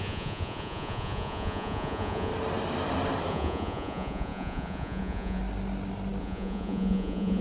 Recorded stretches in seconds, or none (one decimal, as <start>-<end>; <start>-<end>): 2.3-3.3; 5.4-6.2